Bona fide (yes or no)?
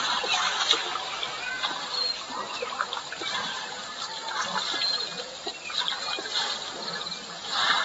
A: yes